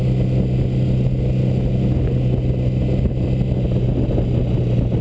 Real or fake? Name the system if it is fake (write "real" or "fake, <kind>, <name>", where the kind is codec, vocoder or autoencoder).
real